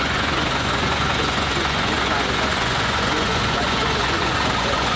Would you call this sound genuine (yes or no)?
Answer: no